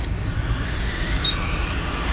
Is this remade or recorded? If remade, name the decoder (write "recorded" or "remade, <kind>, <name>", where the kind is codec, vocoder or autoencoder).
recorded